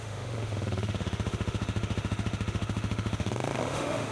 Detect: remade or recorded remade